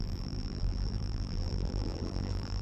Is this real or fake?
fake